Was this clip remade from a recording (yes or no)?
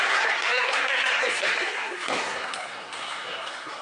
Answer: yes